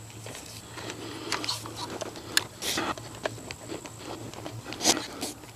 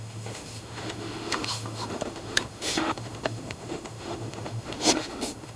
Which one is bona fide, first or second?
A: first